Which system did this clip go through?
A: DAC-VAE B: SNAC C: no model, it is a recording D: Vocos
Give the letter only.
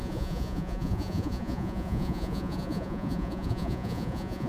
D